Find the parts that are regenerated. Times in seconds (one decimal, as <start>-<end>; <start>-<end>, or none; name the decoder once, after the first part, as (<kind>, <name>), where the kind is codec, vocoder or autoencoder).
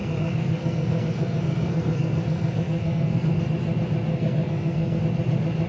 0.0-3.4 (codec, SNAC); 4.1-5.0